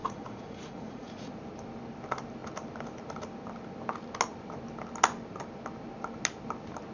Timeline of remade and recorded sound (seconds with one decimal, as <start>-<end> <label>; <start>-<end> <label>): 0.0-1.3 remade; 1.3-6.9 recorded